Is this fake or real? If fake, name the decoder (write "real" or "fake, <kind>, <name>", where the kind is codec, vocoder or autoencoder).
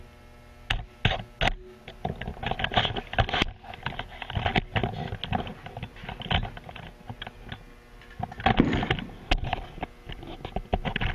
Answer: real